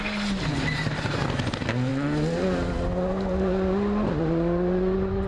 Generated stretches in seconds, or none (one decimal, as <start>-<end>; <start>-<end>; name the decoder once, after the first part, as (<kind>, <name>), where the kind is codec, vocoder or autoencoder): none